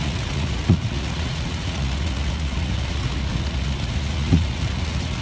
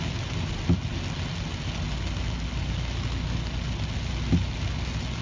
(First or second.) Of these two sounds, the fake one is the first